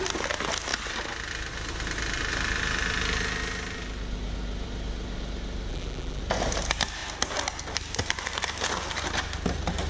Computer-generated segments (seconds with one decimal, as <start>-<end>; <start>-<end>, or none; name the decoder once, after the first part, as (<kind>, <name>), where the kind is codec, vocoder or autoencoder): 5.7-6.2 (vocoder, BigVGAN v2)